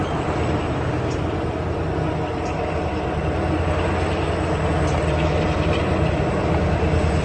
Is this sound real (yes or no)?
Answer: yes